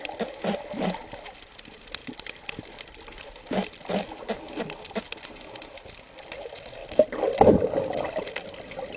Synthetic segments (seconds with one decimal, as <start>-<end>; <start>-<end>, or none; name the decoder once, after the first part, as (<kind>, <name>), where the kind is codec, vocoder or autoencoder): 2.0-2.5 (vocoder, BigVGAN v2)